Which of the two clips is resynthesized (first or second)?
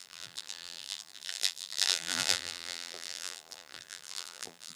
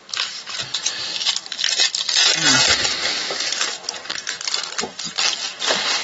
first